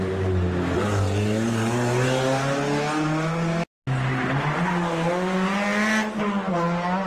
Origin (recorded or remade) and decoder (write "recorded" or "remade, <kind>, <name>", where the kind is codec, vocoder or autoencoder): recorded